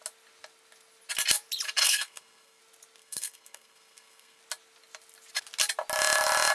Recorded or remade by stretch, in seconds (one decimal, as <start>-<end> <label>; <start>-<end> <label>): 0.0-1.8 recorded; 1.8-2.6 remade; 2.6-3.0 recorded; 3.0-4.4 remade; 4.4-6.5 recorded